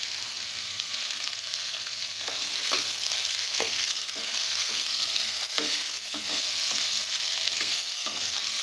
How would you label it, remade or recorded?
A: remade